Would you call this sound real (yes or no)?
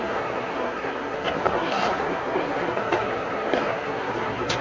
no